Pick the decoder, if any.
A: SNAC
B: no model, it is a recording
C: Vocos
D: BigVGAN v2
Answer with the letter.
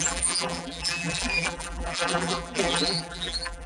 D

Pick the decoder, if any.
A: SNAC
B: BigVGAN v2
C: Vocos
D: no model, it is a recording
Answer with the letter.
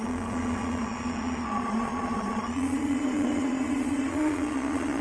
C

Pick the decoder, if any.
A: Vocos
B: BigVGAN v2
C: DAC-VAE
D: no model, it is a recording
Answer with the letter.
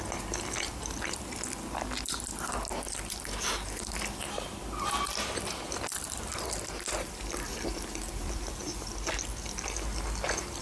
D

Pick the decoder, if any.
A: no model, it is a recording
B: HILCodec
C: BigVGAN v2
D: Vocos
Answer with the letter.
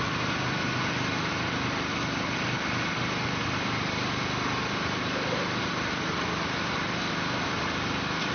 C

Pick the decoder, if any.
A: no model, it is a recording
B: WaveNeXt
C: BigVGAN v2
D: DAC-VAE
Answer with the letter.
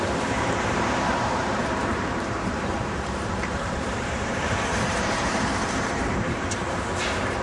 C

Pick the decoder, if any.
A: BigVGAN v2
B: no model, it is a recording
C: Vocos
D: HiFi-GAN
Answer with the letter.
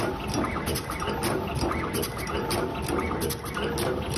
B